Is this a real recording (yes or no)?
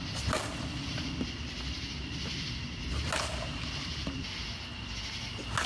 yes